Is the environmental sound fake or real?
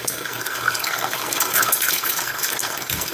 fake